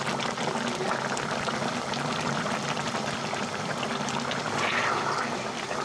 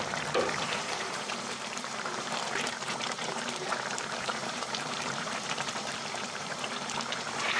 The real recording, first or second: first